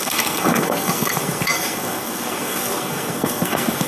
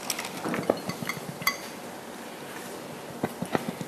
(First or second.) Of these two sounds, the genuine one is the second